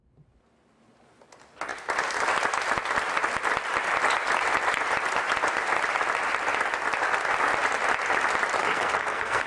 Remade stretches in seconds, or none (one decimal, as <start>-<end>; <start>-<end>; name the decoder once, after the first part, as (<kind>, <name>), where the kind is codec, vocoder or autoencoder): 8.6-9.5 (codec, SNAC)